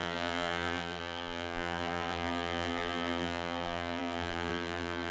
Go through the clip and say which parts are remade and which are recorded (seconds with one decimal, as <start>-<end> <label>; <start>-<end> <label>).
0.0-5.1 remade